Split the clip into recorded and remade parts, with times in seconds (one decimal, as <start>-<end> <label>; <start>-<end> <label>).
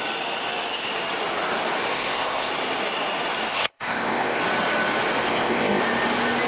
0.0-1.9 recorded; 1.9-2.5 remade; 2.5-3.5 recorded; 3.5-4.4 remade; 4.4-5.3 recorded; 5.3-5.8 remade; 5.8-6.5 recorded